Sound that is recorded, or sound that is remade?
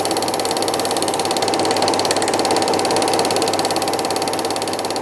recorded